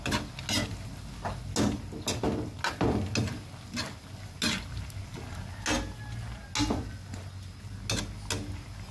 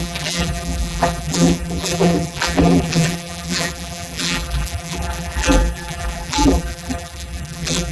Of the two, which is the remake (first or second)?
second